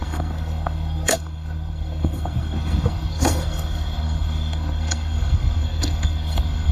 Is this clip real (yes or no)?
no